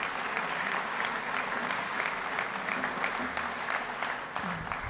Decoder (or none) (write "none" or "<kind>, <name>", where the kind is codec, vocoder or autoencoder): none